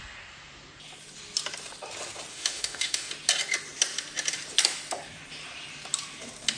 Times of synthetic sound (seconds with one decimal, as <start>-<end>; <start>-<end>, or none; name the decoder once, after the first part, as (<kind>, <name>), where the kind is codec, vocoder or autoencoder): 2.3-3.1 (autoencoder, DAC-VAE)